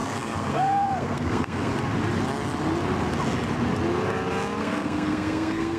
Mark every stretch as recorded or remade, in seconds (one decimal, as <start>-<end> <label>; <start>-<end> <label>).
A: 0.0-1.7 remade; 1.7-4.6 recorded; 4.6-5.8 remade